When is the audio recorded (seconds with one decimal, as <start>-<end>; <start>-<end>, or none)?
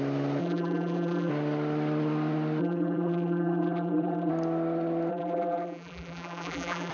0.0-0.4; 1.3-2.6; 4.3-5.1